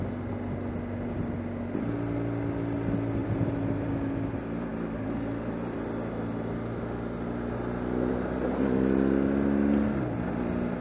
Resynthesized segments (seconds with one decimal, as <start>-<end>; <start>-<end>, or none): 3.2-3.9